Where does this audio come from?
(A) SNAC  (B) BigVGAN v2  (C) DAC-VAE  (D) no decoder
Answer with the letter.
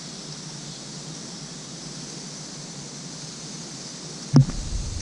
D